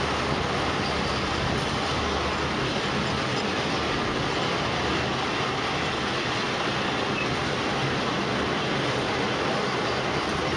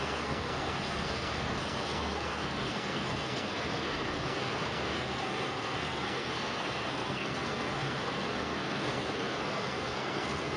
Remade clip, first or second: second